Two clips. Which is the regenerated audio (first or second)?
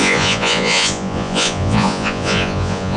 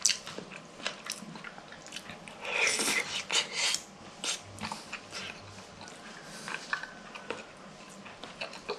first